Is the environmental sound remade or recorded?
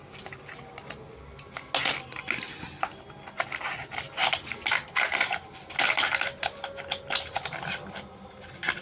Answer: recorded